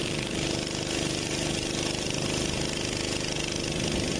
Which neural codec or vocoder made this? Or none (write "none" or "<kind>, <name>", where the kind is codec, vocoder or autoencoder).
none